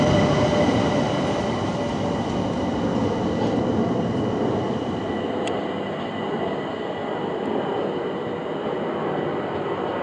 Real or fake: real